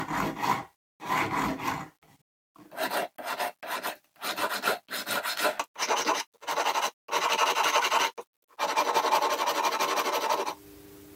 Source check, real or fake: real